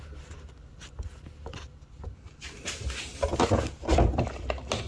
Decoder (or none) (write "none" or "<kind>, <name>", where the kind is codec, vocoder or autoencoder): none